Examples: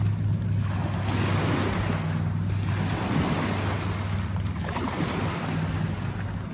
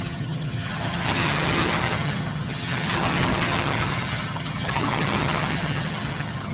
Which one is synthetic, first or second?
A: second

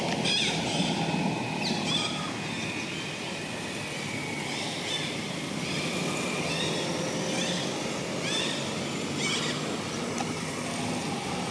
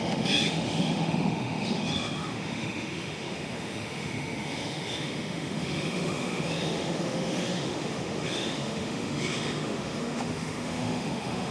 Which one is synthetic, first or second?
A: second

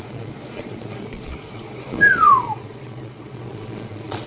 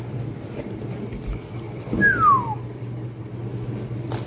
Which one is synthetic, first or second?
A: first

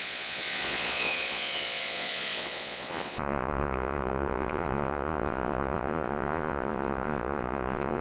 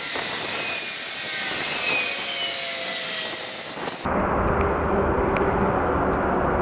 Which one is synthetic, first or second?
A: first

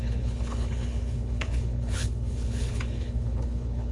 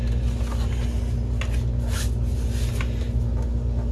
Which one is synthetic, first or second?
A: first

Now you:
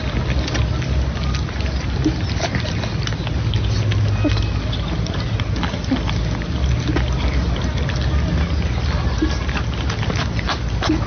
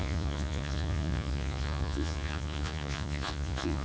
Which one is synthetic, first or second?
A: second